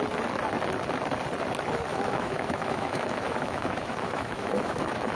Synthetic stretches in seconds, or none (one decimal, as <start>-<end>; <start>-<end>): 1.9-5.2